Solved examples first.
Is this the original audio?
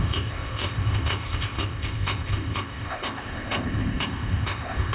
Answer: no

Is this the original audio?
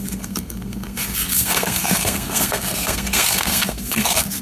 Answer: no